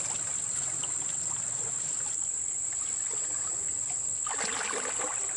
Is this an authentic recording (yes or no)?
yes